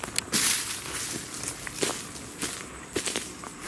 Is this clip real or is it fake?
real